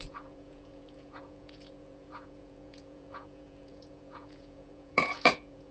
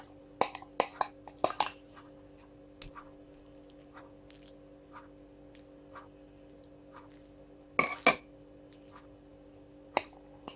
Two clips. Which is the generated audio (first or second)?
first